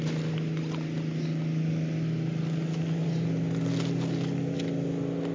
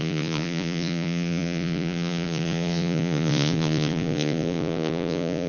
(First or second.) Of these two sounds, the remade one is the second